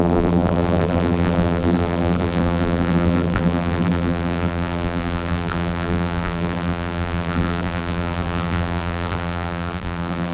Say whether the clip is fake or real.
fake